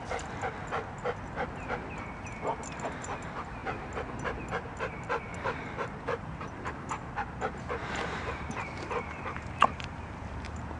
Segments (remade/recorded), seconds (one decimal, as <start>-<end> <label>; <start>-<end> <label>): 0.0-3.6 recorded; 3.6-4.4 remade; 4.4-5.3 recorded; 5.3-10.1 remade; 10.1-10.8 recorded